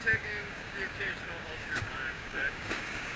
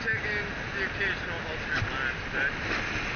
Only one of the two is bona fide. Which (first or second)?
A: second